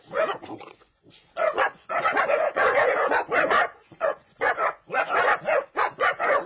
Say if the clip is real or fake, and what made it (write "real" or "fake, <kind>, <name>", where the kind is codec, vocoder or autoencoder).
fake, vocoder, Vocos